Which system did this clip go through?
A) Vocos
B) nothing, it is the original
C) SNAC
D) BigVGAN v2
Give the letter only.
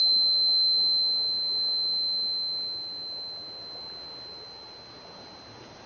B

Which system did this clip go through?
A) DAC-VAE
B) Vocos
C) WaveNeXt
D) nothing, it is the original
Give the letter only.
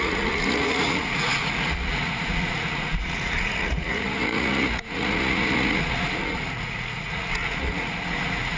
B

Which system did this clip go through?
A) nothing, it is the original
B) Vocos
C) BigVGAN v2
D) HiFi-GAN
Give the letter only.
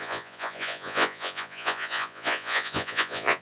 B